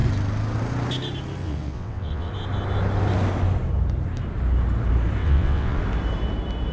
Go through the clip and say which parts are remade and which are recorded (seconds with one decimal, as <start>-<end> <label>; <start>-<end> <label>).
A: 0.0-1.4 recorded; 1.4-2.3 remade; 2.3-5.2 recorded; 5.2-5.8 remade; 5.8-6.7 recorded